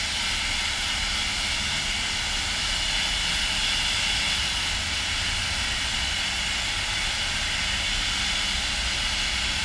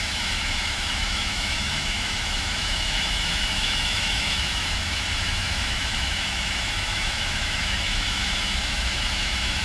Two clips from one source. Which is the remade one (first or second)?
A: second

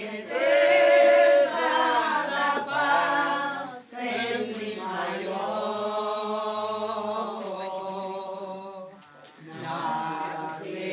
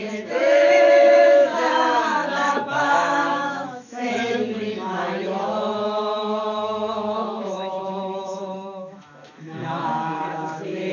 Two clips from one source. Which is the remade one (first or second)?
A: second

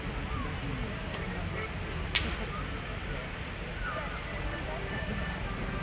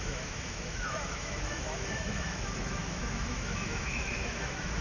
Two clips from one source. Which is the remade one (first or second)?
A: second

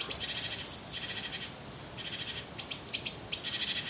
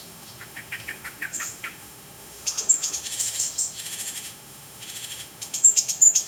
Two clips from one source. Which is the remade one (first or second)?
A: second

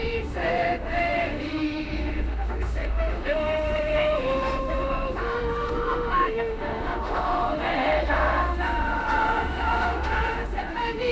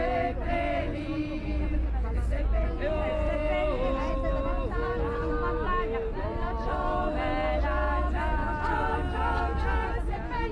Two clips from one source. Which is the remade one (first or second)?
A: first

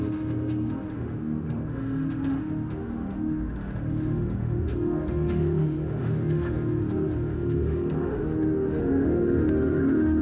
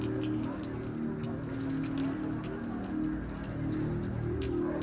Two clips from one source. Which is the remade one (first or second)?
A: first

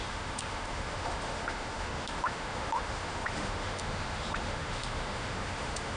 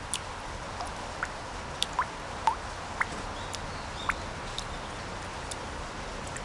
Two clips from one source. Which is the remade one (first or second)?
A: first